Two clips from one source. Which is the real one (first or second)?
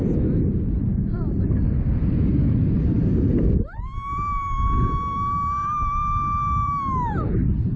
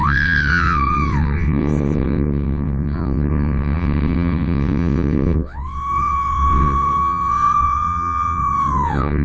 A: first